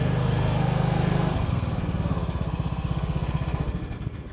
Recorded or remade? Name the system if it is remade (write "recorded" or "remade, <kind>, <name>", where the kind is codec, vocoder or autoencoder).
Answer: remade, codec, SNAC